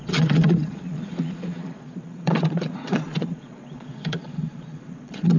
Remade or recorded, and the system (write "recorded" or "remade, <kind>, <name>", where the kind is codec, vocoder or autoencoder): remade, vocoder, Vocos